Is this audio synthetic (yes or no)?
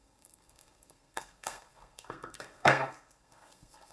yes